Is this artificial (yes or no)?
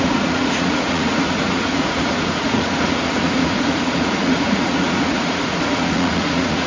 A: yes